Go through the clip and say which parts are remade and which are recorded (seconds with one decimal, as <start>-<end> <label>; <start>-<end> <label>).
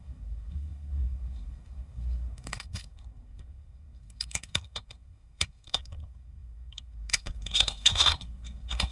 0.0-8.9 remade